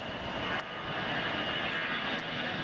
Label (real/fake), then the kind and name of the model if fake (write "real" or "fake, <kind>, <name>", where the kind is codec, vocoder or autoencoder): real